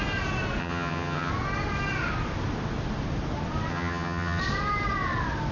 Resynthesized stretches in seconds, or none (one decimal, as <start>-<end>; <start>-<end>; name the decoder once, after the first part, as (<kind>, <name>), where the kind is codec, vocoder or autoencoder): 0.6-1.3 (vocoder, HiFi-GAN); 3.7-4.4